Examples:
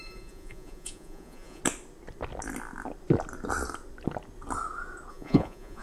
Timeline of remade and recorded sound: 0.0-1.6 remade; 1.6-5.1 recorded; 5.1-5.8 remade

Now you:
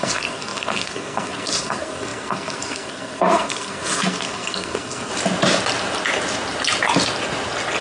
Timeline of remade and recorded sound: 0.0-5.1 remade; 5.1-7.8 recorded

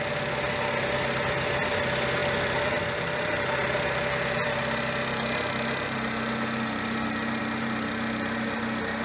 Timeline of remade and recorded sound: 0.0-9.0 recorded

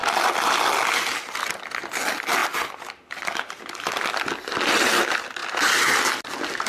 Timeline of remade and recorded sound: 0.0-6.7 recorded

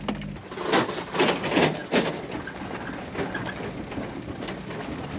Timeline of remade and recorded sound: 0.0-5.2 recorded